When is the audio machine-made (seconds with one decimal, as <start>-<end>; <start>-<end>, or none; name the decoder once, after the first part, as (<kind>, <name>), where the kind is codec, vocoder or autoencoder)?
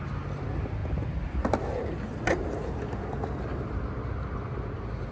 none